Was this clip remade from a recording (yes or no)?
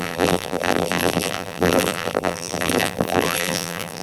yes